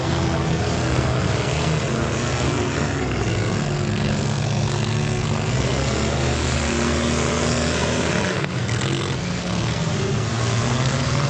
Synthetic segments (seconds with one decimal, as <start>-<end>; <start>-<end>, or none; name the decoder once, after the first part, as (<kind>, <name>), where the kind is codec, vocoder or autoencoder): 0.0-11.3 (codec, SNAC)